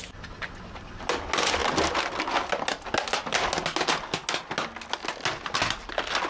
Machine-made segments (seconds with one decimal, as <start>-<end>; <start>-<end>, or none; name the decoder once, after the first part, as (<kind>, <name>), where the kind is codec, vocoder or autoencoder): none